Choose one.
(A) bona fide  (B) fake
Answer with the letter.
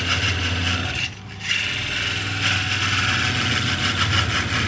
A